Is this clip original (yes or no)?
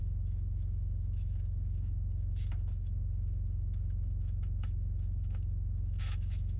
no